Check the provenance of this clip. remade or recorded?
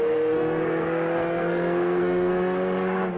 remade